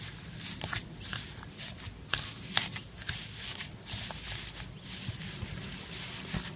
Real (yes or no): yes